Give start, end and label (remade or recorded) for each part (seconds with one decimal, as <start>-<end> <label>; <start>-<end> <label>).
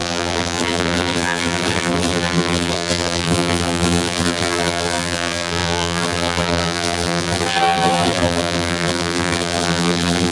0.0-10.3 remade